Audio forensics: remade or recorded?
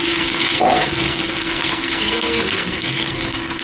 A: remade